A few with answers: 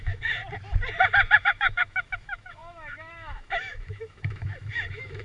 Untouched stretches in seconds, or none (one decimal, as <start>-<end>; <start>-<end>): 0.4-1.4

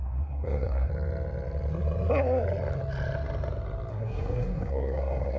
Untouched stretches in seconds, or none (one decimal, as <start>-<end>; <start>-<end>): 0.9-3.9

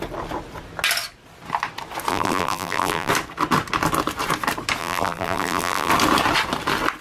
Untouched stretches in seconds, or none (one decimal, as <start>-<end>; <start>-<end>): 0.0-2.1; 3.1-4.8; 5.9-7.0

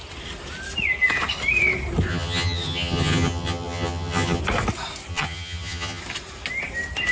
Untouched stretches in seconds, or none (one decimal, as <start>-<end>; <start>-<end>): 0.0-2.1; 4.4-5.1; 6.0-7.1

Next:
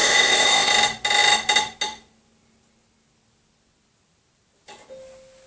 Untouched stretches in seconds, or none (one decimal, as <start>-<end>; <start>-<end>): 0.7-5.5

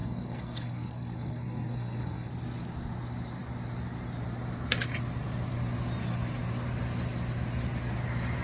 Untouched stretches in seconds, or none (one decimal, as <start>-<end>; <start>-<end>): 2.3-8.4

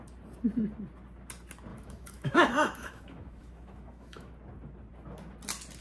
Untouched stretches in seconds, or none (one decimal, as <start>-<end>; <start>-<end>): 0.0-1.7; 4.3-5.8

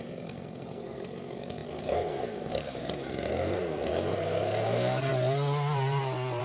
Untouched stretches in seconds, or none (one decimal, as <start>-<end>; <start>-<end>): 5.1-6.4